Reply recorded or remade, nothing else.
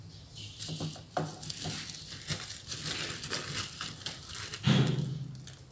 recorded